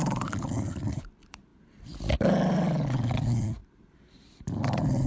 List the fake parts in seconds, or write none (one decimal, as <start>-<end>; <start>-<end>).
0.0-1.5; 3.1-5.1